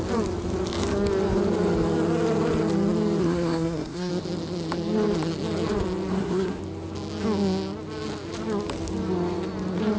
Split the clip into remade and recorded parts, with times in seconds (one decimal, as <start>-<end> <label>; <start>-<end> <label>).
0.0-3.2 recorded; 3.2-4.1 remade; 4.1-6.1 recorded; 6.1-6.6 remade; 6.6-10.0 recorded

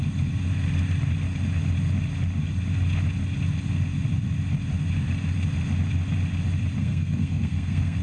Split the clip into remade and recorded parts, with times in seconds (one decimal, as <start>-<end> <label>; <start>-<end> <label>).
0.0-6.8 recorded; 6.8-8.0 remade

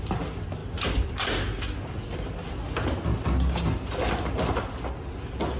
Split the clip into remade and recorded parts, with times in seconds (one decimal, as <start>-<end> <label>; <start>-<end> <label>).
0.0-5.6 recorded

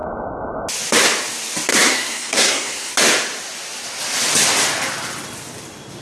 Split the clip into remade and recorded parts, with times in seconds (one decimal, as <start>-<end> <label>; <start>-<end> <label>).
0.0-1.7 recorded; 1.7-2.9 remade; 2.9-6.0 recorded